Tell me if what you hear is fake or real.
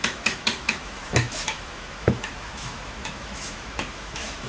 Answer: fake